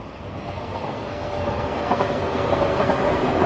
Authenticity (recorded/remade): remade